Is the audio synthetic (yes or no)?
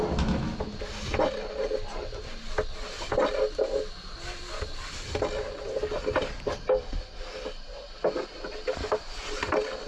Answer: no